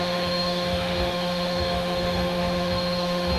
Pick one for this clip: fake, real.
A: fake